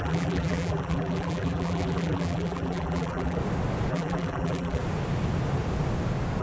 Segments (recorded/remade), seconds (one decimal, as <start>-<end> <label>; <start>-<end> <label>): 0.0-3.4 remade; 3.4-3.9 recorded; 3.9-4.8 remade; 4.8-6.4 recorded